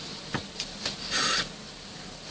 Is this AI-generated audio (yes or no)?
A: no